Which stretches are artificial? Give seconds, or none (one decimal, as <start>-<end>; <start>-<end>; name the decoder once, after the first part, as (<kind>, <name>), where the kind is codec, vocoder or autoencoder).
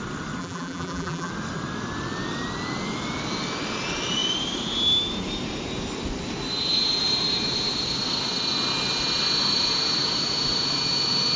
0.4-1.3 (vocoder, BigVGAN v2)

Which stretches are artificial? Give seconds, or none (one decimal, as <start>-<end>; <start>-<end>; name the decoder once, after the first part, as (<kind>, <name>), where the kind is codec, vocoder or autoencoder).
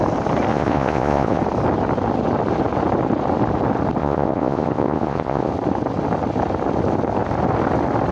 0.5-1.4 (vocoder, Vocos); 4.0-5.5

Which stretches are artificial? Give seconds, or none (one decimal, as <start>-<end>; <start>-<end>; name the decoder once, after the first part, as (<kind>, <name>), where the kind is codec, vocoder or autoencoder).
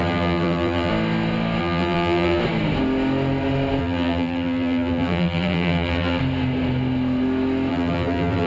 0.0-0.9 (vocoder, BigVGAN v2); 1.6-2.4; 3.8-6.2; 7.7-8.5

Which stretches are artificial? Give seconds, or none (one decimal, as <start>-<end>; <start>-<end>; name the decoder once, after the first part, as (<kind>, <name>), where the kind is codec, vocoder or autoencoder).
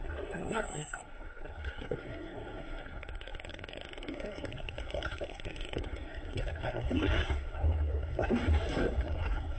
0.0-9.6 (codec, SNAC)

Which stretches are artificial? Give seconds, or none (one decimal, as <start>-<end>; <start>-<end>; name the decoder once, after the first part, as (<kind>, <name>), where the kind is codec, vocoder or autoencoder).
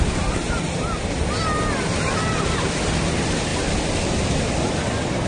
none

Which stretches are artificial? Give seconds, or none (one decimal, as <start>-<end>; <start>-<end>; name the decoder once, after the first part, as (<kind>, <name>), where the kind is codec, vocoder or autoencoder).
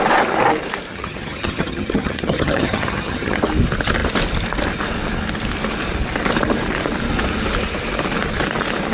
0.9-3.4 (vocoder, HiFi-GAN)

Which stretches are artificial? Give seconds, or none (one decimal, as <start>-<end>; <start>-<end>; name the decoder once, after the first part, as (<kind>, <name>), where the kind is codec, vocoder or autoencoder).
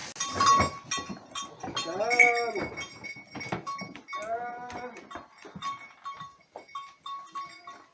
none